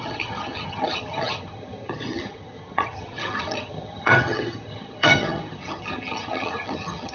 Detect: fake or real fake